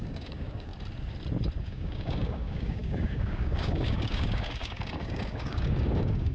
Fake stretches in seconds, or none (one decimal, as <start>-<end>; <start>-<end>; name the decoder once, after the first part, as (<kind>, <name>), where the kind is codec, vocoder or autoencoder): 0.0-0.7 (codec, DAC); 1.6-6.3